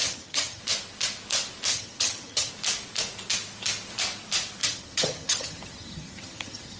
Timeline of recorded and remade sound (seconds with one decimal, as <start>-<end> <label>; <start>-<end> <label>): 0.0-0.6 remade; 0.6-1.7 recorded; 1.7-2.5 remade; 2.5-4.6 recorded; 4.6-6.8 remade